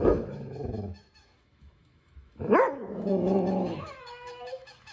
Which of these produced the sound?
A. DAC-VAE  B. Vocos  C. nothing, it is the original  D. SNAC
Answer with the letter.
A